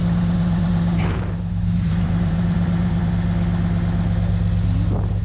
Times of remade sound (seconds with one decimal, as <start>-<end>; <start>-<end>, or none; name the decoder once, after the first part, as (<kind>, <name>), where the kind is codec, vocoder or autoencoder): 0.0-3.1 (vocoder, BigVGAN v2)